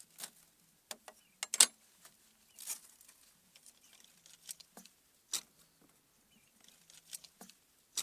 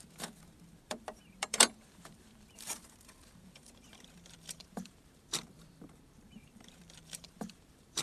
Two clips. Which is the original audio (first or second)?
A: first